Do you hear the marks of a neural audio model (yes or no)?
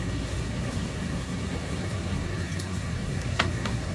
yes